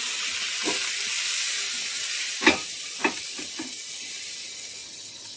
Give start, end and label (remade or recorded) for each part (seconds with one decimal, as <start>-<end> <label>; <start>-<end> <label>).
0.0-4.8 recorded; 4.8-5.4 remade

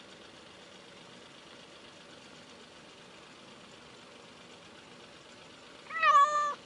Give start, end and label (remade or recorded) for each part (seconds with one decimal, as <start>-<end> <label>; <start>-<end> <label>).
0.0-6.7 recorded

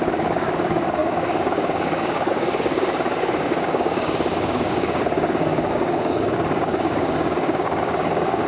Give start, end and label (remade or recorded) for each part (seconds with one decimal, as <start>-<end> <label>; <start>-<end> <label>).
0.0-8.5 remade